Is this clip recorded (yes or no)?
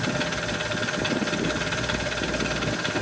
yes